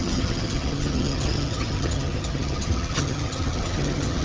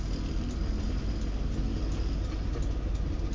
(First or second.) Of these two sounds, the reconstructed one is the first